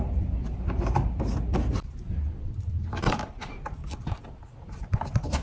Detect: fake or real real